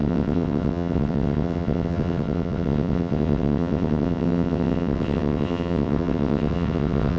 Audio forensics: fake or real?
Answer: fake